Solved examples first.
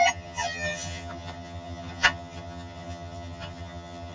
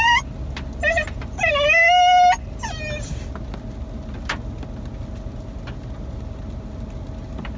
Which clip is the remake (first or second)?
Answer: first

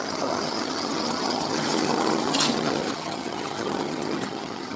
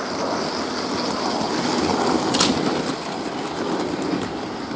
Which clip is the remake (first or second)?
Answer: first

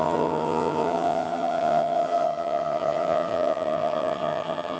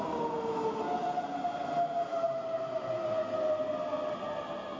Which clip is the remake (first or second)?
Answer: first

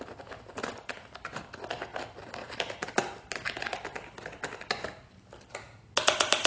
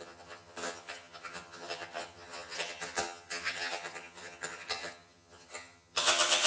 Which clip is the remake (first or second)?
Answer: second